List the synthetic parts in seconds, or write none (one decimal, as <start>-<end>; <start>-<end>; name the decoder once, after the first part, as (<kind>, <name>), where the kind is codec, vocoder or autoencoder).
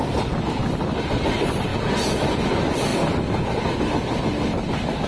1.7-2.5 (vocoder, Vocos)